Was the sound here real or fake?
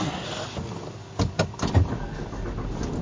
real